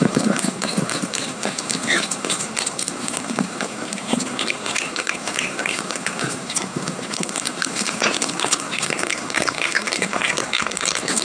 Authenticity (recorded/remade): remade